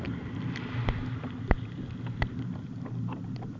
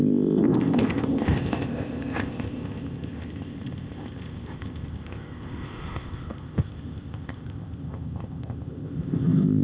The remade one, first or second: second